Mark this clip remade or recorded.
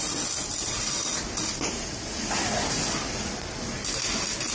recorded